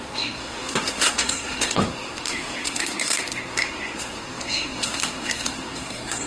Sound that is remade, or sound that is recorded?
remade